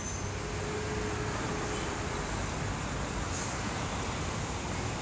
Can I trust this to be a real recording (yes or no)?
yes